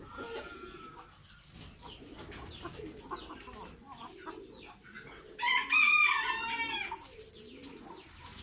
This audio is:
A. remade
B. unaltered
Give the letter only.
B